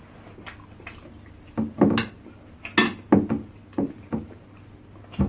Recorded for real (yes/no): yes